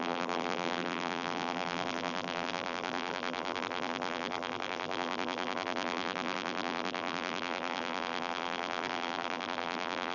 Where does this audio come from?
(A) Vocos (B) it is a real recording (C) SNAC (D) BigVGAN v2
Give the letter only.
D